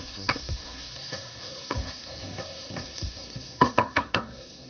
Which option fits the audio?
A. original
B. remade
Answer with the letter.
B